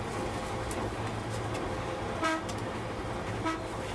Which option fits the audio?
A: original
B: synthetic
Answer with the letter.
A